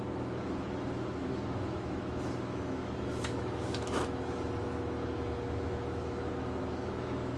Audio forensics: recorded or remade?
remade